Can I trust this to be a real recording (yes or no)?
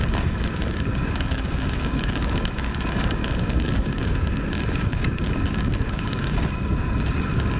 no